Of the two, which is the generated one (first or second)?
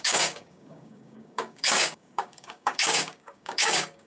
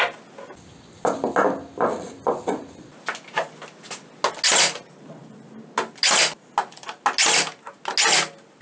first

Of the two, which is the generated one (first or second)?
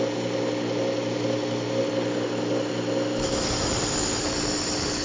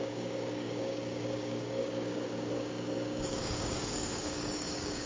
second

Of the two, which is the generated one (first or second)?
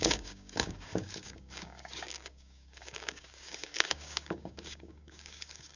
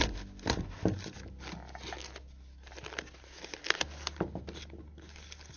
first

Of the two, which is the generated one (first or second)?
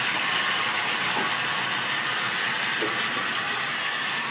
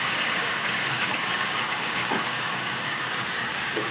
second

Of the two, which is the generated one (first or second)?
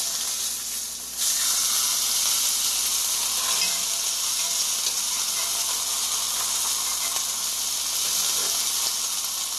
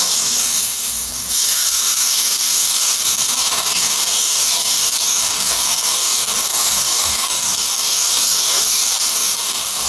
second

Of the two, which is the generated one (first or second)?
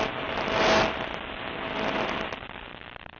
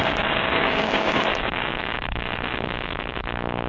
second